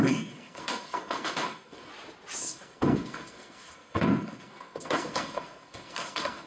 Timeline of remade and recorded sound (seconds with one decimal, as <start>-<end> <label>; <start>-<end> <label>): 0.0-1.9 remade; 1.9-2.4 recorded; 2.4-6.5 remade

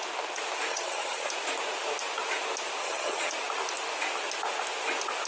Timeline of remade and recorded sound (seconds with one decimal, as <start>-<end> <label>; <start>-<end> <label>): 0.0-0.7 recorded; 0.7-1.3 remade; 1.3-2.8 recorded; 2.8-3.3 remade; 3.3-5.3 recorded